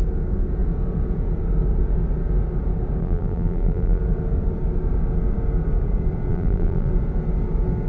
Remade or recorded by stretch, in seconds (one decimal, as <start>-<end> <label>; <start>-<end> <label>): 0.0-3.0 recorded; 3.0-4.0 remade; 4.0-6.3 recorded; 6.3-6.9 remade; 6.9-7.9 recorded